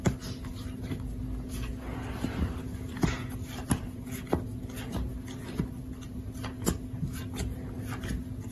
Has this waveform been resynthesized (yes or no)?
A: no